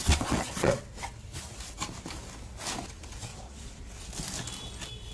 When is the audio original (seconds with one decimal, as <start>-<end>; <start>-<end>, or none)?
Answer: 0.8-3.3; 3.8-5.1